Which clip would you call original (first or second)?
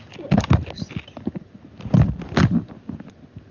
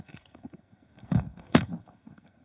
first